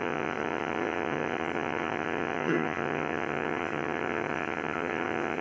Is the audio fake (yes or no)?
yes